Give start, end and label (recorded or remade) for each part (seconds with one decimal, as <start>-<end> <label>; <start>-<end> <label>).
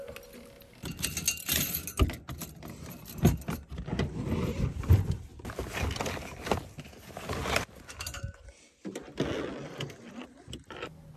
0.0-11.2 recorded